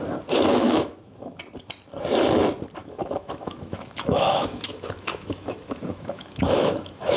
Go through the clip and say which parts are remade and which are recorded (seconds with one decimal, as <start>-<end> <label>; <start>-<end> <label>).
0.0-0.5 recorded; 0.5-1.4 remade; 1.4-2.8 recorded; 2.8-7.2 remade